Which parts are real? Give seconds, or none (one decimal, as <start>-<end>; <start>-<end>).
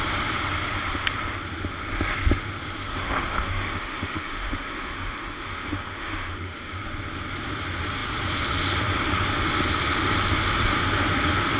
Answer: 0.0-2.9; 6.8-11.6